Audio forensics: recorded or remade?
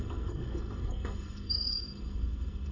remade